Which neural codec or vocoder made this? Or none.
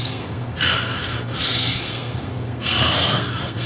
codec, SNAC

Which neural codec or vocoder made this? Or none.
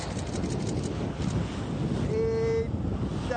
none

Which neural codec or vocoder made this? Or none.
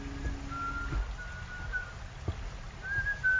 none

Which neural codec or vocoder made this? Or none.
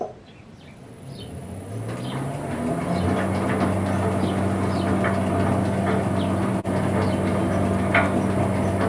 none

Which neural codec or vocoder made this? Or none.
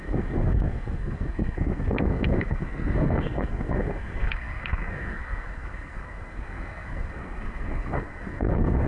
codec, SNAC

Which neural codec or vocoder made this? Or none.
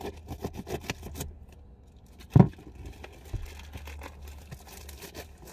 none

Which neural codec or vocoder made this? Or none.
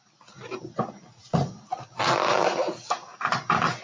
none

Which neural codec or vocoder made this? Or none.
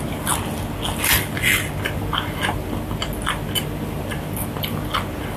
none